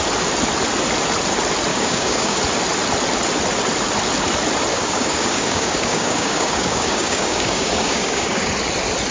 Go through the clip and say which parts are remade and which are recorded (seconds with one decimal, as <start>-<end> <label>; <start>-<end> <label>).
0.0-1.7 recorded; 1.7-2.4 remade; 2.4-4.7 recorded; 4.7-8.5 remade; 8.5-9.1 recorded